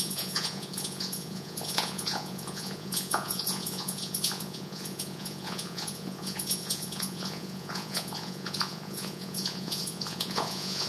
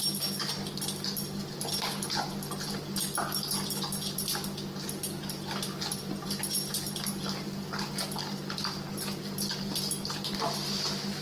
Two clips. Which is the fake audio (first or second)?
first